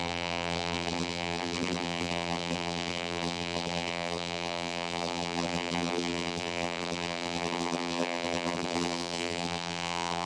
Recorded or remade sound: remade